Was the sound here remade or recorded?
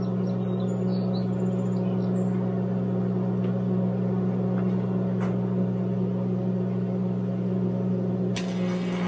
recorded